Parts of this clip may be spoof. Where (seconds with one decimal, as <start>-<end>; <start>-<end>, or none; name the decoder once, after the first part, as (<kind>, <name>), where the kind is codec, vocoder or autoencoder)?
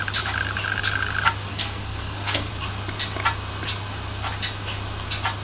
1.5-2.5 (codec, SNAC)